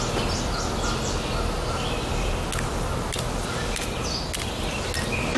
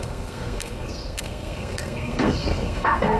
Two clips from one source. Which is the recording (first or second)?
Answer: first